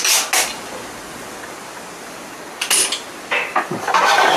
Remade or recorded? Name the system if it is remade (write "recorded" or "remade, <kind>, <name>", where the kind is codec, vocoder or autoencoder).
recorded